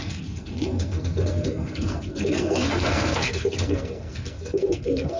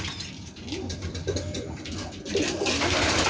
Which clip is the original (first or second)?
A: second